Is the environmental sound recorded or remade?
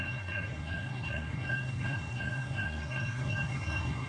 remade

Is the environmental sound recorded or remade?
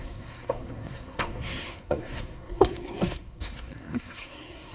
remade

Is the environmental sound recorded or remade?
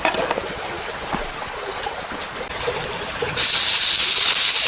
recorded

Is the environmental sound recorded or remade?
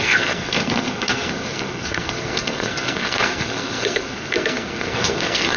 remade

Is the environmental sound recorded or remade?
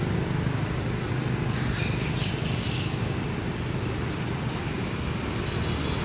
recorded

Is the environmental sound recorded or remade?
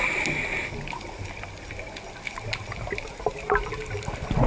recorded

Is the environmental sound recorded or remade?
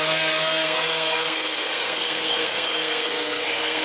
remade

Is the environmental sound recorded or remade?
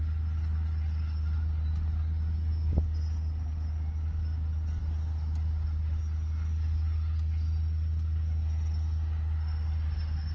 recorded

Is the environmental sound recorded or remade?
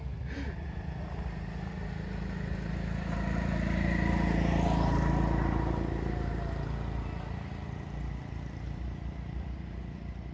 recorded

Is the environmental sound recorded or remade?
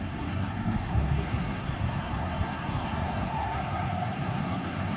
remade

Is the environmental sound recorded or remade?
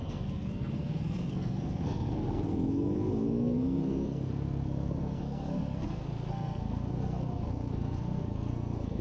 remade